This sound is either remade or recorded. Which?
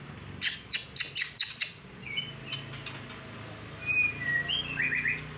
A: recorded